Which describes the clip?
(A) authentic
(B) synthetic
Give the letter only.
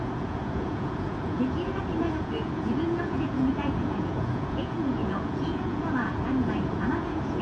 B